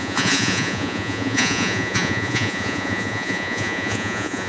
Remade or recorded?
remade